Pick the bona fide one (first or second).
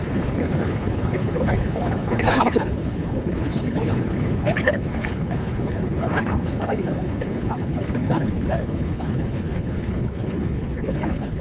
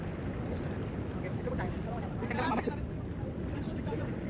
second